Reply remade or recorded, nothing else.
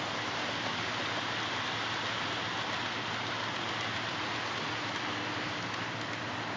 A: recorded